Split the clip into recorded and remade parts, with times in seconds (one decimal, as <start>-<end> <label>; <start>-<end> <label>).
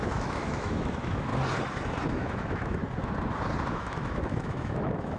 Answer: 0.0-1.3 remade; 1.3-2.1 recorded; 2.1-2.8 remade; 2.8-3.7 recorded; 3.7-5.2 remade